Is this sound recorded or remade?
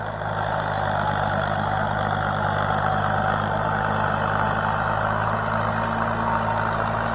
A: recorded